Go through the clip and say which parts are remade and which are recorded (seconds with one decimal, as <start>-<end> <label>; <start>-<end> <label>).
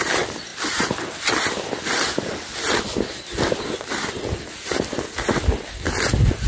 0.0-6.5 recorded